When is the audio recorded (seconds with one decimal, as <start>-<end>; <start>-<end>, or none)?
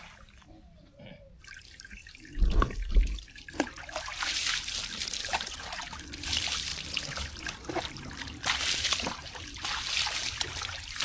6.7-7.7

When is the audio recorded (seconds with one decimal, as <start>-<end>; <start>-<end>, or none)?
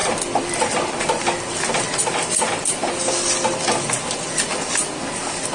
0.0-5.5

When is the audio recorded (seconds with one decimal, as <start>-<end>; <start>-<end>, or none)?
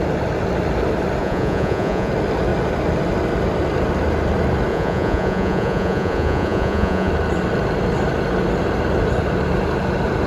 0.0-1.2; 2.1-4.7; 7.1-10.3